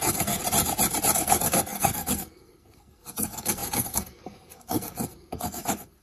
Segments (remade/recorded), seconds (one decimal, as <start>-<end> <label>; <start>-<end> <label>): 0.0-0.4 remade; 0.4-1.1 recorded; 1.1-6.0 remade